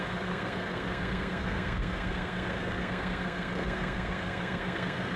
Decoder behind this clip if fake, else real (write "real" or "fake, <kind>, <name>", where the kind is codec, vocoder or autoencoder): fake, codec, SNAC